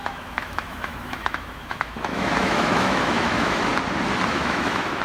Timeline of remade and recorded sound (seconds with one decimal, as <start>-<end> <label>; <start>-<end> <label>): 0.0-3.7 remade; 3.7-4.3 recorded; 4.3-5.0 remade